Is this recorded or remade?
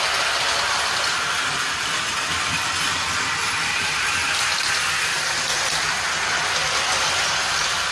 recorded